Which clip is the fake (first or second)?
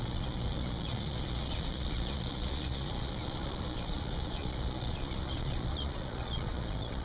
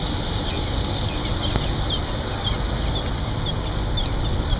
first